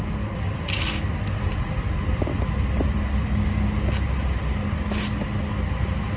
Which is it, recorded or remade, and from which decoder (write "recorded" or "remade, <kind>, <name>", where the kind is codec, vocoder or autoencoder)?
recorded